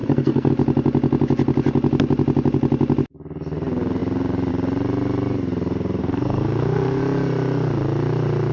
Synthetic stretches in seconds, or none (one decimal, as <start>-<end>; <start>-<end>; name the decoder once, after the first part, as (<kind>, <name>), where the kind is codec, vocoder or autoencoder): 0.0-0.5 (codec, SNAC); 6.0-7.0